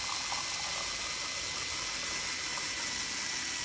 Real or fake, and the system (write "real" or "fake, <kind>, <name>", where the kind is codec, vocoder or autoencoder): real